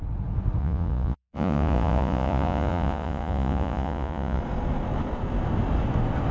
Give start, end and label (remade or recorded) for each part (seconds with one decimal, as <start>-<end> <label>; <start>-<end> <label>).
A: 0.0-0.6 recorded; 0.6-4.4 remade; 4.4-6.3 recorded